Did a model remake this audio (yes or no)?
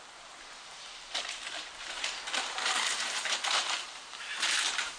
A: yes